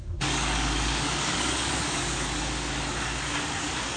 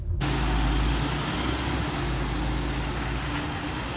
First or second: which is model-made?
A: first